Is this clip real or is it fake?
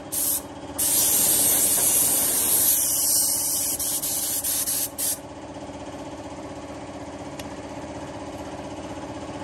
real